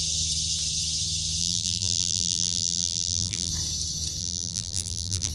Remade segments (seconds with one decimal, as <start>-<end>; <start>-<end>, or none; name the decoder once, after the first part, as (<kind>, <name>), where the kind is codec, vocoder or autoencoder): 1.4-3.5 (vocoder, BigVGAN v2); 4.2-5.3

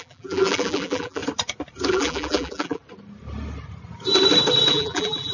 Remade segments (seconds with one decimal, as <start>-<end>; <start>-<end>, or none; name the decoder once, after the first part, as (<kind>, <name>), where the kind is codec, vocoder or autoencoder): 0.0-1.2 (vocoder, BigVGAN v2); 1.9-2.8; 4.7-5.3

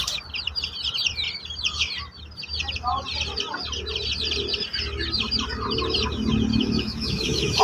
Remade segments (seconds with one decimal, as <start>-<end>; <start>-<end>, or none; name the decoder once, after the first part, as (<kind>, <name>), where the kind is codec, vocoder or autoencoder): 6.5-7.6 (autoencoder, DAC-VAE)

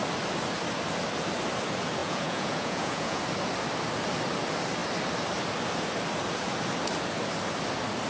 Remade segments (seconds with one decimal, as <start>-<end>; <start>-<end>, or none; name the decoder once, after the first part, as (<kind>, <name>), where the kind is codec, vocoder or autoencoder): 2.0-3.2 (vocoder, Vocos)

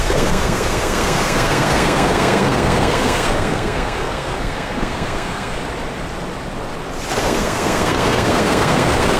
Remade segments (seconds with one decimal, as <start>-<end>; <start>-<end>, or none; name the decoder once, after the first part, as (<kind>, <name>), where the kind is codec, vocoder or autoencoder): 0.0-5.6 (codec, SNAC); 7.2-9.2

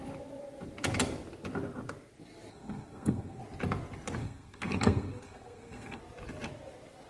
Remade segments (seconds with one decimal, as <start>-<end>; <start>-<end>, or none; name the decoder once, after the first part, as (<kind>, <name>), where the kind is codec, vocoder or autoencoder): 2.5-3.4 (codec, SNAC); 4.2-6.0

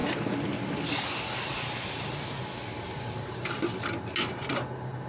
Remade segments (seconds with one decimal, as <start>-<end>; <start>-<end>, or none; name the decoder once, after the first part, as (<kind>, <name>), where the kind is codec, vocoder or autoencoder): 2.7-3.5 (vocoder, BigVGAN v2)